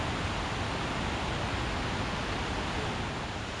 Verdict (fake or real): real